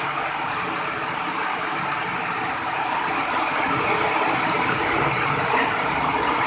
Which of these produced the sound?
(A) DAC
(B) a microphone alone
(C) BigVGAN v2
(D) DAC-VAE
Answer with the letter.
B